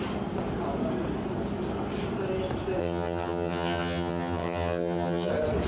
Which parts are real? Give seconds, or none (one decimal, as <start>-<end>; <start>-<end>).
0.0-2.8; 5.3-5.7